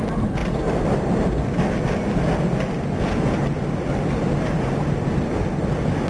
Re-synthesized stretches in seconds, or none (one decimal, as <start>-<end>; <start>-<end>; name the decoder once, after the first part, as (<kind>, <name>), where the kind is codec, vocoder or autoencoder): none